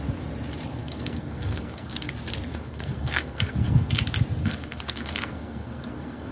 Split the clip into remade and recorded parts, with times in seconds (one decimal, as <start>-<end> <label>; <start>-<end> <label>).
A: 0.0-0.8 recorded; 0.8-2.1 remade; 2.1-2.5 recorded; 2.5-3.9 remade; 3.9-4.4 recorded; 4.4-6.3 remade